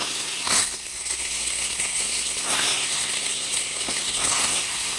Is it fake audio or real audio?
fake